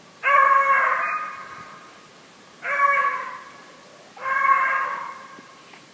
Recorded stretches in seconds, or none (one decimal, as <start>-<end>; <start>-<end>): none